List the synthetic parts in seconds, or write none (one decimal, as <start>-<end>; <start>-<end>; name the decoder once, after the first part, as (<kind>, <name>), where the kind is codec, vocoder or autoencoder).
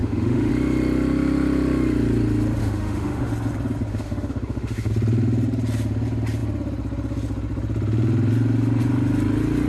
0.0-0.5 (autoencoder, DAC-VAE); 2.6-3.3; 3.9-4.9